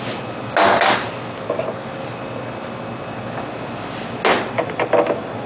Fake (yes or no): no